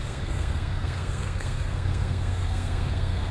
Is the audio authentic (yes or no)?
no